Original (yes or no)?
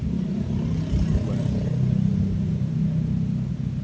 yes